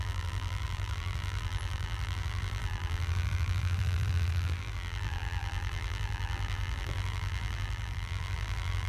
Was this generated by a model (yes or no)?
yes